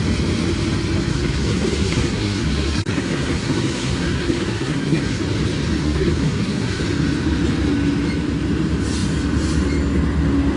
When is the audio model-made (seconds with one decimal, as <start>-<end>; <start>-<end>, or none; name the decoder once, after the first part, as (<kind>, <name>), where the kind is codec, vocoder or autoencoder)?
1.1-5.2 (codec, SNAC); 5.8-6.8